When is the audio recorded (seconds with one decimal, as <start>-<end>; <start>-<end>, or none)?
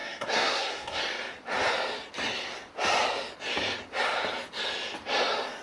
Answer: 1.0-5.6